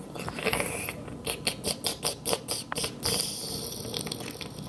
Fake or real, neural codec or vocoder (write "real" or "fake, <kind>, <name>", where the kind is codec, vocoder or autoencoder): real